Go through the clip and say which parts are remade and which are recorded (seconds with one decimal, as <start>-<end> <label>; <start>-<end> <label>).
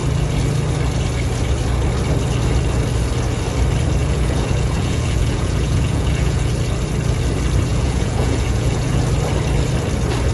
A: 0.0-4.0 recorded; 4.0-6.5 remade; 6.5-7.7 recorded; 7.7-9.0 remade; 9.0-10.3 recorded